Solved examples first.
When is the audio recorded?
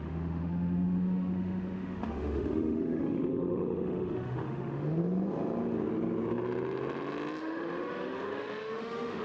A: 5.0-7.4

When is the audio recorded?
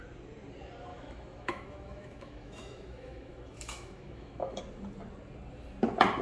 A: 0.0-0.9; 4.6-6.2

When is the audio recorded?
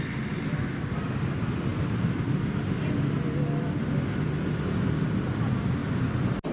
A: 0.0-6.5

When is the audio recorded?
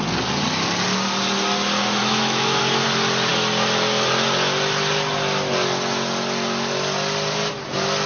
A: 0.0-2.0; 2.6-8.1